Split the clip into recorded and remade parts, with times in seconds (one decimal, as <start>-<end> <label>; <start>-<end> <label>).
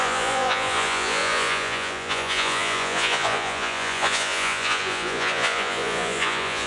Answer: 0.0-6.7 remade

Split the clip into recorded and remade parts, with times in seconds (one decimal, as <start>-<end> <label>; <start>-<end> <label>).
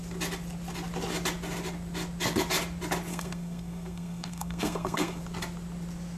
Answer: 0.0-3.1 recorded; 3.1-5.2 remade; 5.2-6.2 recorded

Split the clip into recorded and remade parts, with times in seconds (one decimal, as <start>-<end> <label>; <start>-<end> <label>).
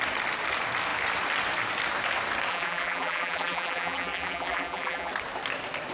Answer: 0.0-2.5 recorded; 2.5-5.1 remade; 5.1-5.9 recorded